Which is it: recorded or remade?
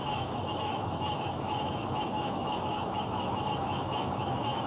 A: remade